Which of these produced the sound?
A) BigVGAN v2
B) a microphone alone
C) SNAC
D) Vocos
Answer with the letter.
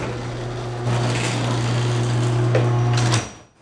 B